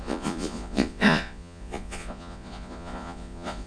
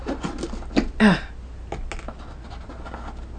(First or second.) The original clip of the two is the second